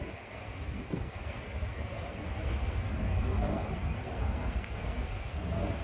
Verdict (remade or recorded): remade